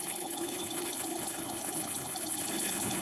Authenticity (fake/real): fake